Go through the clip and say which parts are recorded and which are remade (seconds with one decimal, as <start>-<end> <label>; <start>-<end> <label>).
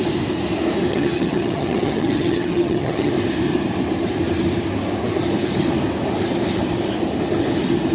0.0-0.9 recorded; 0.9-3.1 remade; 3.1-7.9 recorded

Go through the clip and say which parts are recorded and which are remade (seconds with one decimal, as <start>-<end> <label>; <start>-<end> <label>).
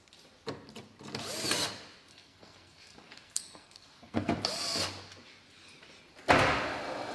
0.0-2.1 recorded; 2.1-4.3 remade; 4.3-7.1 recorded